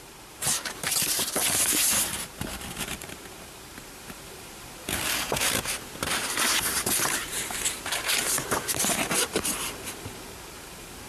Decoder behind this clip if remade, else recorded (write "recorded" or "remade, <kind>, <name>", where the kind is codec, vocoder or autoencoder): remade, vocoder, BigVGAN v2